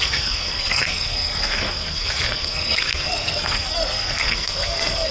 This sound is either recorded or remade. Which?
remade